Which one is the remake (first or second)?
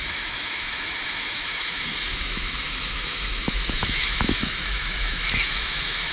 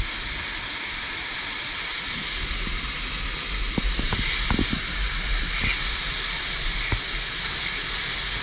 first